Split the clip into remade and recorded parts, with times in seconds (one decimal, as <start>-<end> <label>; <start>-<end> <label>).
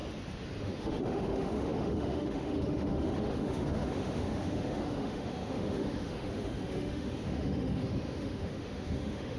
0.0-0.6 recorded; 0.6-9.4 remade